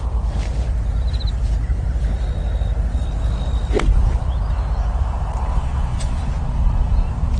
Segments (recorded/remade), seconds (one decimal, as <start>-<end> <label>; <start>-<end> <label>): 0.0-5.5 recorded; 5.5-6.3 remade; 6.3-7.4 recorded